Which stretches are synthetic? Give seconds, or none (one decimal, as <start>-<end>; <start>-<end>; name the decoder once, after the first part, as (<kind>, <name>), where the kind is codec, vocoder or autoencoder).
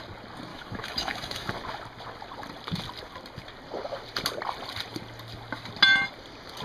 0.5-1.5 (autoencoder, DAC-VAE)